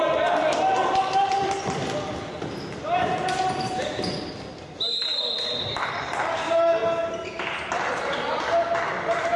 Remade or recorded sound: recorded